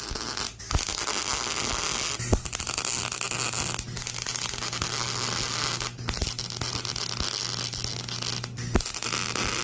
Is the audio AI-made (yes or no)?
no